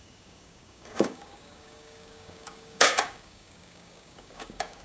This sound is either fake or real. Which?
fake